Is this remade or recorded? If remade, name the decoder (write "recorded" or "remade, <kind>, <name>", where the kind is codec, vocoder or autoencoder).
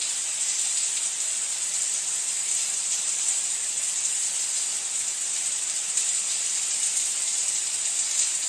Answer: recorded